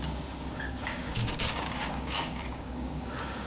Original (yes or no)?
no